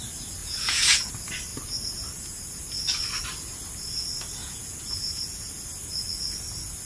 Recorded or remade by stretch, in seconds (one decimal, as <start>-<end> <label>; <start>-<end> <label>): 0.0-0.4 recorded; 0.4-1.1 remade; 1.1-4.4 recorded; 4.4-5.5 remade; 5.5-6.9 recorded